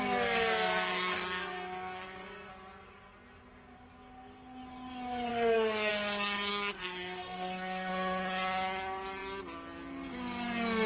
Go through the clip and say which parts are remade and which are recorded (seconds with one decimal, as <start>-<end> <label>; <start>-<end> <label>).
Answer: 0.0-0.9 recorded; 0.9-2.5 remade; 2.5-5.3 recorded; 5.3-5.9 remade; 5.9-6.5 recorded; 6.5-7.9 remade; 7.9-10.9 recorded